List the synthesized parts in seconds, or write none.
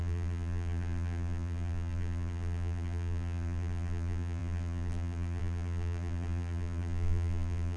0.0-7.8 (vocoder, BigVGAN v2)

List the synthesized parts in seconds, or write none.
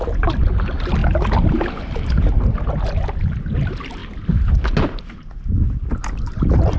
none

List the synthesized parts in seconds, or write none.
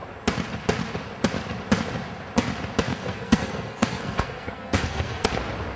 2.9-5.3 (codec, SNAC)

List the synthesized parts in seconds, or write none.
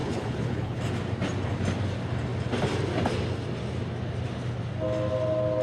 0.0-0.8 (codec, HILCodec)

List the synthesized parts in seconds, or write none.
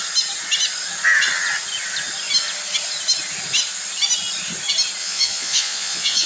5.0-6.3 (vocoder, Vocos)